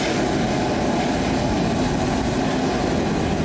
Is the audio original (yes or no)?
yes